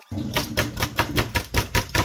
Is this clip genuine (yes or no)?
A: yes